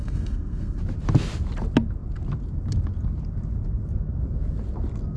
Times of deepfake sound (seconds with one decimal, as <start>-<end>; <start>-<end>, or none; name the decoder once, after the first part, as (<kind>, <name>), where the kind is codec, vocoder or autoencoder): 0.0-0.8 (codec, SNAC)